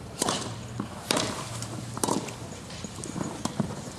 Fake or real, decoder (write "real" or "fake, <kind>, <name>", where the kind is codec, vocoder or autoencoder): fake, vocoder, BigVGAN v2